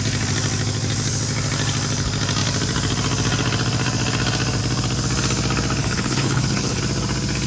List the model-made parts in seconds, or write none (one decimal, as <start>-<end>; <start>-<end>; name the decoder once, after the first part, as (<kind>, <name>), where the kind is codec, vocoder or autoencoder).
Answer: 5.8-6.8 (codec, HILCodec)

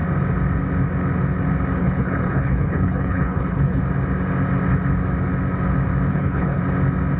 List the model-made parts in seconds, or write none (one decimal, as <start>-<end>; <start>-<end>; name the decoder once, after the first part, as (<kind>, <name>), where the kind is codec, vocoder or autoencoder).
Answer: 1.8-3.8 (codec, HILCodec); 6.1-6.6

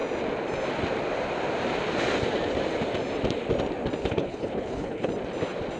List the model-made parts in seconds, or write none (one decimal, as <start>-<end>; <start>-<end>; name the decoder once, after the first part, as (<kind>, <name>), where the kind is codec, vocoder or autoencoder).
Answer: 4.0-5.1 (codec, HILCodec)

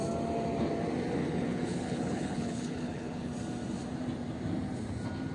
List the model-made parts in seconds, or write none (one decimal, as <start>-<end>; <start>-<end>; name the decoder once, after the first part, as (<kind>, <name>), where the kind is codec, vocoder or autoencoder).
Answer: 1.2-3.3 (codec, HILCodec)

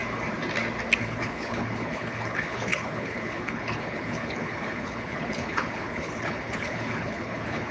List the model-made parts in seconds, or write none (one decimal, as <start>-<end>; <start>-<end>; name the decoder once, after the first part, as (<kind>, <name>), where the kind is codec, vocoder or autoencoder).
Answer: 1.0-7.7 (codec, HILCodec)

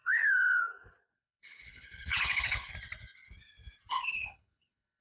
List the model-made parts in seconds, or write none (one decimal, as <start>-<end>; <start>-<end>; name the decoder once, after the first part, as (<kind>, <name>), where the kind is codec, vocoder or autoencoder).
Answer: 0.0-0.6 (codec, HILCodec); 1.1-2.7; 3.9-5.0